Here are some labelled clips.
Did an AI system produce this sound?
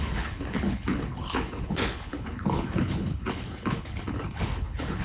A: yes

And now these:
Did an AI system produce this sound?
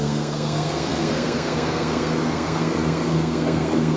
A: yes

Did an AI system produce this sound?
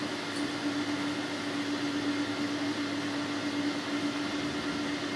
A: no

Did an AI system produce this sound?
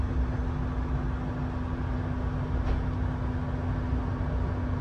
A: no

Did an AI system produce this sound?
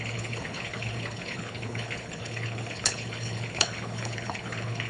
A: yes